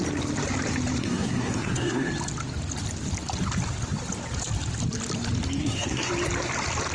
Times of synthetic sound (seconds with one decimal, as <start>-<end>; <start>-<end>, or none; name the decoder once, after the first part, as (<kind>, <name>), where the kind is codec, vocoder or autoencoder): 1.0-2.1 (codec, SNAC); 5.6-6.1